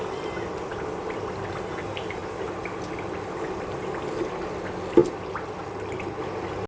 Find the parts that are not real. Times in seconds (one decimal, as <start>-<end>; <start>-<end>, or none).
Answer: none